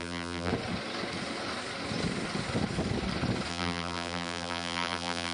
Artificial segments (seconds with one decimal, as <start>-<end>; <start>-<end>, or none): 0.0-0.5; 3.5-5.3